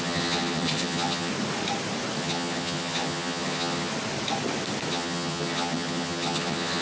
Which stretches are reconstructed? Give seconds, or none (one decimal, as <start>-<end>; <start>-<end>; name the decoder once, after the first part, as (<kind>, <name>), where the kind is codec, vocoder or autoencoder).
0.0-1.3 (vocoder, HiFi-GAN); 2.2-3.9; 4.9-6.8